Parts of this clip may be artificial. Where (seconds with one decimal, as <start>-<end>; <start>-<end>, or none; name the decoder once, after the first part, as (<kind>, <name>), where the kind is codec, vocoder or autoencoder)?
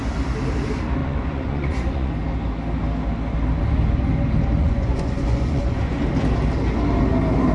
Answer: 1.0-2.1 (vocoder, Vocos); 4.6-6.0